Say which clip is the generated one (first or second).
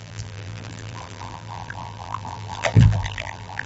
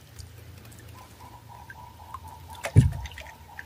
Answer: first